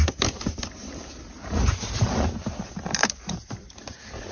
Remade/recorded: remade